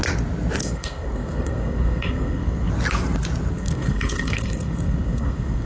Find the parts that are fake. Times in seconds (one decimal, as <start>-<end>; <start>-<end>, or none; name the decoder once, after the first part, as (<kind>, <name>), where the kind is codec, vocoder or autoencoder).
0.6-2.7 (codec, SNAC); 3.5-5.7